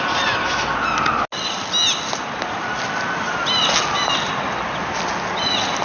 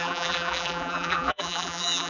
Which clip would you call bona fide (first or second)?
first